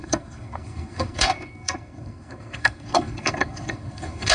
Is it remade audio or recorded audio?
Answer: remade